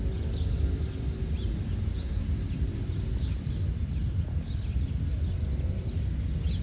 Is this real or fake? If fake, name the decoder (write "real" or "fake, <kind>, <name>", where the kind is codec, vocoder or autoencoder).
real